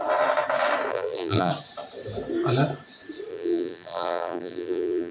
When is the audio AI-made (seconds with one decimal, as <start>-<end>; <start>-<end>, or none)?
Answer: 0.9-1.5; 3.3-5.1